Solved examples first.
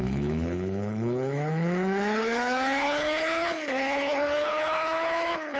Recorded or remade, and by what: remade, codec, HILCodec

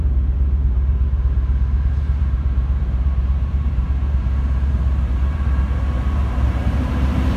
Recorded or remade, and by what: remade, vocoder, BigVGAN v2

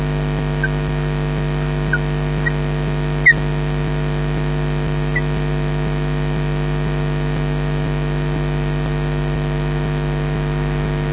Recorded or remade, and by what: recorded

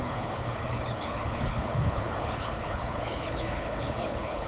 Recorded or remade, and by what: remade, codec, HILCodec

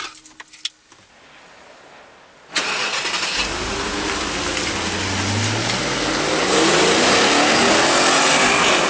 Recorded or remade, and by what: recorded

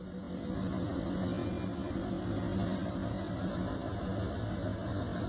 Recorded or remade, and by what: recorded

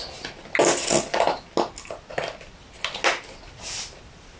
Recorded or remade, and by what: recorded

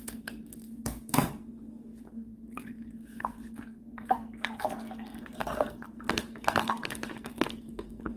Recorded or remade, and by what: remade, codec, SNAC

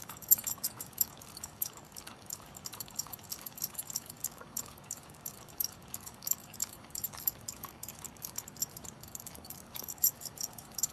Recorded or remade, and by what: remade, codec, DAC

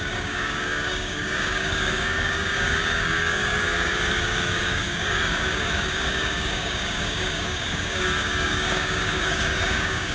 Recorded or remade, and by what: remade, codec, DAC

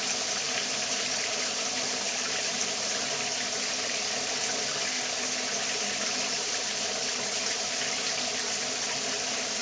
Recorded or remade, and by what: recorded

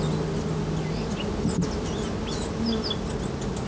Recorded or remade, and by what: recorded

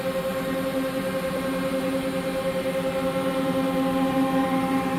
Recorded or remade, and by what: remade, vocoder, BigVGAN v2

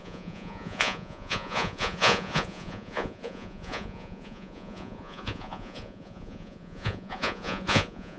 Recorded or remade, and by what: remade, vocoder, Vocos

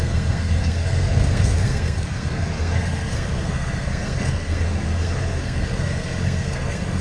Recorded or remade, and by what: remade, codec, SNAC